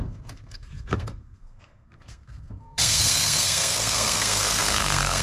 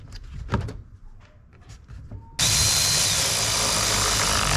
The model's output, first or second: first